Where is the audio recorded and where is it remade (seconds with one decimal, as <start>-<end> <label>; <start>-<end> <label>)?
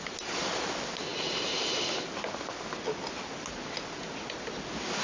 0.0-5.0 recorded